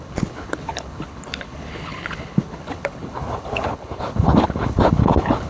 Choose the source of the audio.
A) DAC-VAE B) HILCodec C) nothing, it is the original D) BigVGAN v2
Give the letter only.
B